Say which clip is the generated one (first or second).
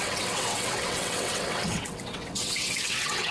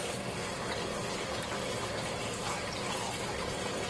first